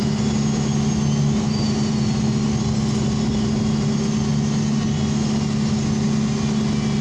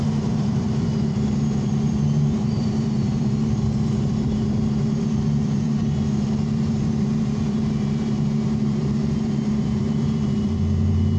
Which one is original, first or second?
first